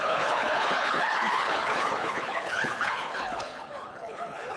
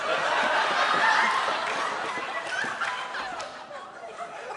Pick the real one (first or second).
second